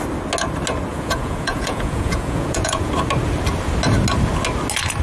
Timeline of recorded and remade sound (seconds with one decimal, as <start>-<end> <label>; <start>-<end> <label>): 0.0-0.9 recorded; 0.9-2.9 remade; 2.9-5.0 recorded